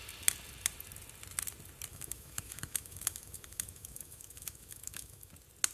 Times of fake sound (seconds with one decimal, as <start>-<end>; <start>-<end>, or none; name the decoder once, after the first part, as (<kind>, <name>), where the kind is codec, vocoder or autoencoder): 1.9-5.3 (autoencoder, DAC-VAE)